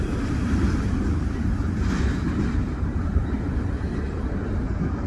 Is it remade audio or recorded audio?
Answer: remade